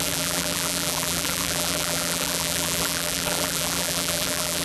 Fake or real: fake